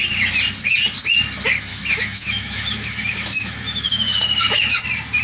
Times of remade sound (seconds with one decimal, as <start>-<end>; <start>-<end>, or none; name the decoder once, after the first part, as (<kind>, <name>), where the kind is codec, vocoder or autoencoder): 1.7-4.8 (autoencoder, DAC-VAE)